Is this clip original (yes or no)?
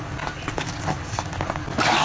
yes